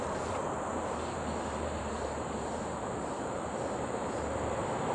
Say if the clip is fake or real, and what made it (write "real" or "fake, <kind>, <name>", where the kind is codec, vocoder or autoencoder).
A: fake, vocoder, BigVGAN v2